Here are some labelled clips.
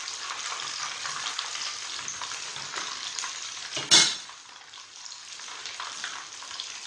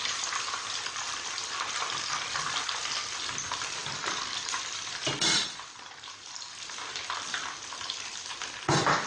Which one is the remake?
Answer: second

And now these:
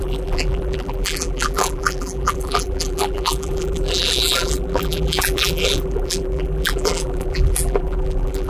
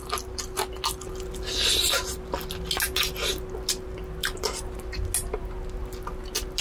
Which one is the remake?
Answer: first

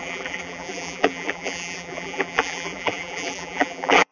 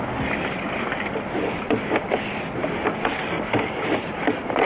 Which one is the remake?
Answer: first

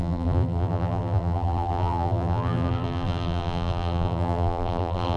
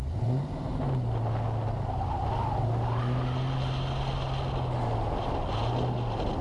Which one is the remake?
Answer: first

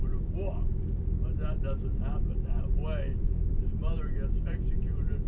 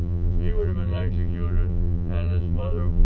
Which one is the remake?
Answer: second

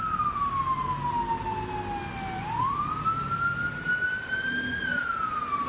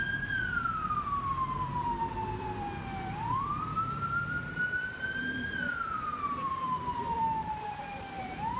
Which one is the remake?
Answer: second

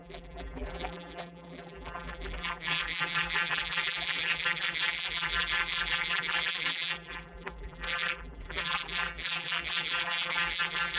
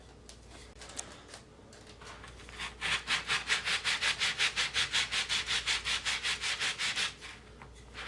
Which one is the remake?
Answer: first